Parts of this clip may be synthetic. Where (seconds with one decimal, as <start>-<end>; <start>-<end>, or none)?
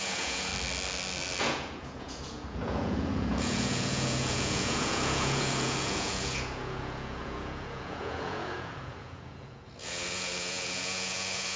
0.0-0.5; 1.4-11.6